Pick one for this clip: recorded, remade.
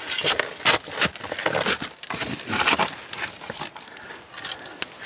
recorded